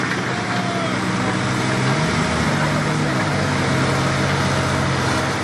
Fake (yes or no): no